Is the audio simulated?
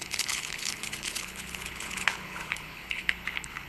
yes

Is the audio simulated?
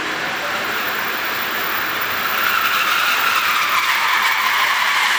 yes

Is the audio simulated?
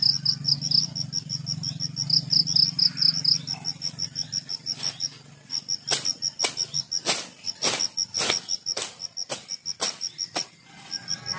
no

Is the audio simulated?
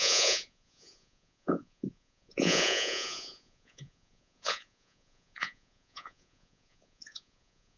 yes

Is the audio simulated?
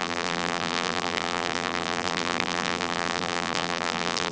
yes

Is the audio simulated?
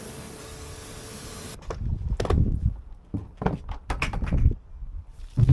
no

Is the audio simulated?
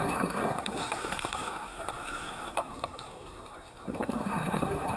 yes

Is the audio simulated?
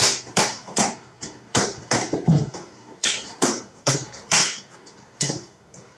yes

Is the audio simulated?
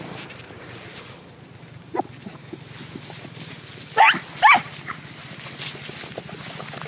no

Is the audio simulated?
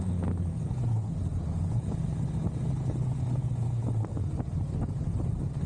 no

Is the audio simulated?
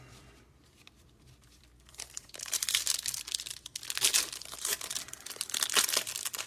yes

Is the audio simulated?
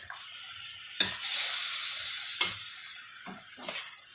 no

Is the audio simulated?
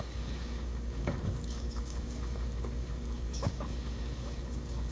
yes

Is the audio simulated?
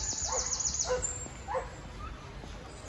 no